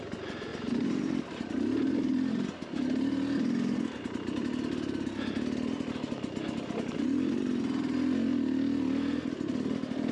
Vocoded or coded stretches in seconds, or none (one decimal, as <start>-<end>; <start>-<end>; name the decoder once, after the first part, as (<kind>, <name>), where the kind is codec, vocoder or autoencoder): 0.5-1.4 (vocoder, BigVGAN v2)